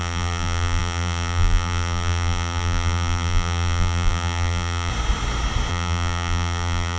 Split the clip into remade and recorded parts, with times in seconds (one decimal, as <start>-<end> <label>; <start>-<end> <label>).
0.0-4.9 remade; 4.9-5.7 recorded; 5.7-7.0 remade

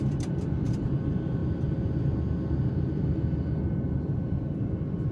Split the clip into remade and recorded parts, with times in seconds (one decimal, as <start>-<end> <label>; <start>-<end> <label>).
0.0-5.1 recorded

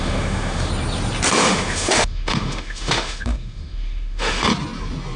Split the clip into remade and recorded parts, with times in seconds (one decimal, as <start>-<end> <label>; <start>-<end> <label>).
0.0-0.7 remade; 0.7-1.4 recorded; 1.4-4.5 remade; 4.5-5.2 recorded

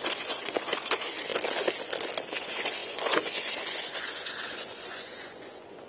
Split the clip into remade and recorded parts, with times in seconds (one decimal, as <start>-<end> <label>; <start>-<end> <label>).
0.0-1.3 remade; 1.3-2.4 recorded; 2.4-5.9 remade

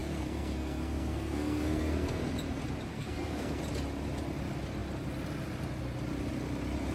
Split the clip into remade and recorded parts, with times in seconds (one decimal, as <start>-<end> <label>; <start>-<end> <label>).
0.0-2.3 remade; 2.3-2.9 recorded; 2.9-3.6 remade; 3.6-6.9 recorded

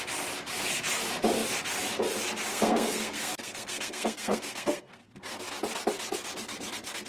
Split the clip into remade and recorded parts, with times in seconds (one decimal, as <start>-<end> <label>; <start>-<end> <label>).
0.0-2.5 recorded; 2.5-5.0 remade; 5.0-7.1 recorded